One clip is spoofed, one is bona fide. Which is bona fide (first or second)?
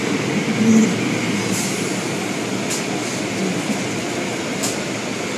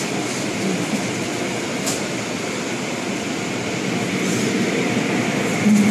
first